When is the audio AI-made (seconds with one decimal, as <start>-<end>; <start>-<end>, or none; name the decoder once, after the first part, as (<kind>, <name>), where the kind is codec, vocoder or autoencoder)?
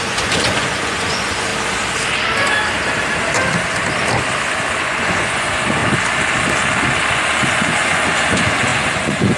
0.0-1.5 (vocoder, Vocos); 4.8-5.8; 7.1-9.4